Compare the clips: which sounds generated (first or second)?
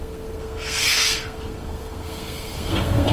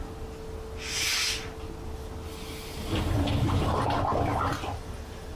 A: first